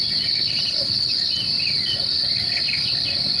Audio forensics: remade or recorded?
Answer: recorded